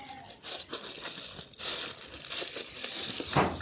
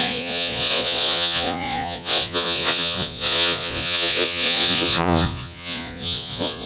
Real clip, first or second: first